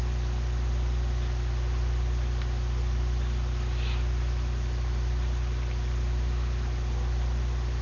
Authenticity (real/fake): real